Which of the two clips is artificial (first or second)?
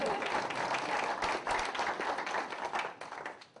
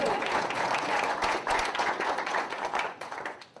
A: second